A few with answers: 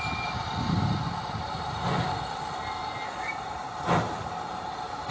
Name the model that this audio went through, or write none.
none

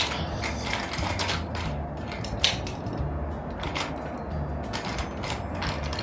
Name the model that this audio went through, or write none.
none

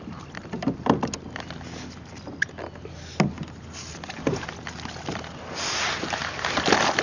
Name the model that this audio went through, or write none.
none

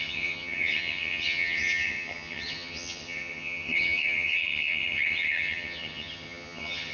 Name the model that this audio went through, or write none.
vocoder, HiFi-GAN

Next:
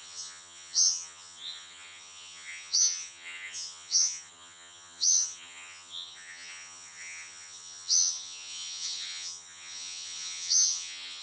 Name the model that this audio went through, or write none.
vocoder, HiFi-GAN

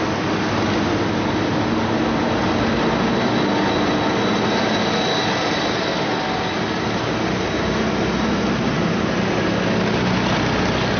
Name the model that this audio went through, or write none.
none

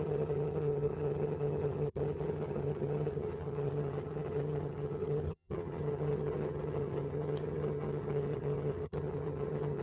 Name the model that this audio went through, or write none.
vocoder, HiFi-GAN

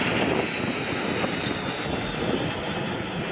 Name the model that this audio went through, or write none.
none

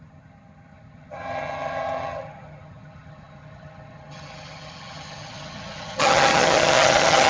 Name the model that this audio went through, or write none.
vocoder, HiFi-GAN